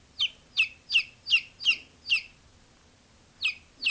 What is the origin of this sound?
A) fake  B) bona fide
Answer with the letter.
B